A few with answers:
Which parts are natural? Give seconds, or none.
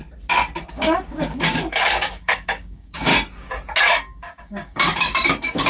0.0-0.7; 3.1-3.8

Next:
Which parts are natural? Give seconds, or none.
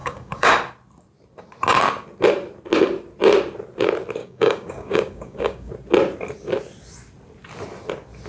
0.5-4.2; 5.7-8.3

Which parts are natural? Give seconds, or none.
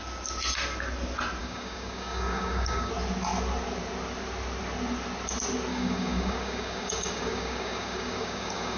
0.0-1.4; 2.9-5.7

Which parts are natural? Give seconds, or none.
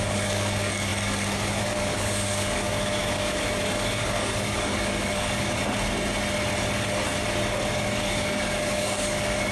5.6-7.8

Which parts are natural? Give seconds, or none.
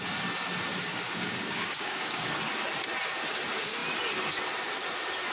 0.0-0.7; 2.4-5.3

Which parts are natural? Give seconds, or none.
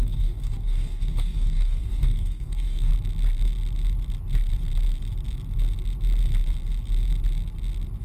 2.9-8.0